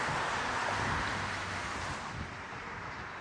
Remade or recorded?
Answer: recorded